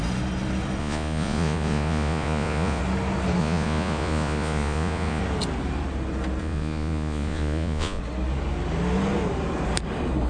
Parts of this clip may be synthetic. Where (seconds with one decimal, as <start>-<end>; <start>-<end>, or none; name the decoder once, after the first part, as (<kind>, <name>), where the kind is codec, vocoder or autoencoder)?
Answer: 0.8-2.8 (vocoder, Vocos); 3.4-5.2; 6.4-8.0

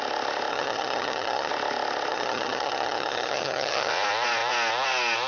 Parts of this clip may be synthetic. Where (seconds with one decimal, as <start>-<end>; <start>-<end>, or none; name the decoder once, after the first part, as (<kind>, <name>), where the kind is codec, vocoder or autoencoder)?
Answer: 0.5-1.5 (vocoder, HiFi-GAN); 2.1-3.9